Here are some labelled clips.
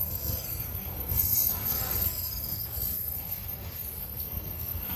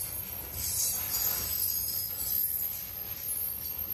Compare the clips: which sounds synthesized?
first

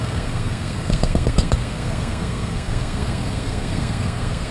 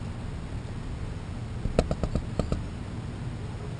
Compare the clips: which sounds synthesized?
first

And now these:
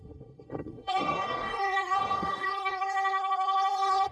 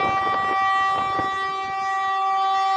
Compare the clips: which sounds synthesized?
first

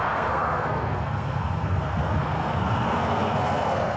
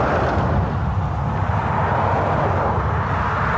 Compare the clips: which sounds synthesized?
first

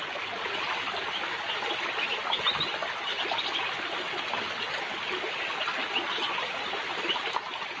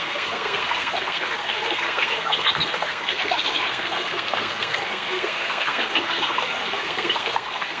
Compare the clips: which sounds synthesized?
second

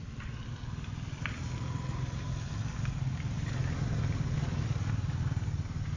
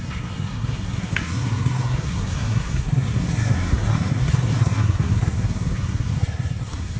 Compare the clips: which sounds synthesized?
second